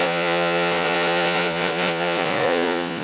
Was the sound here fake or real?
fake